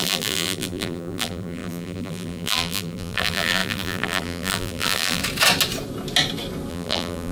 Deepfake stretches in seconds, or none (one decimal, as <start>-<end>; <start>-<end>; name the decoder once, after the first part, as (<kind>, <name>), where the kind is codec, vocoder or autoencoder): 0.0-5.2 (vocoder, BigVGAN v2); 6.7-7.3